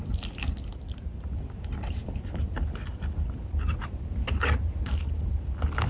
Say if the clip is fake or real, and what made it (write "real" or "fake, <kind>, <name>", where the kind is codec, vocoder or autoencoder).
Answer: real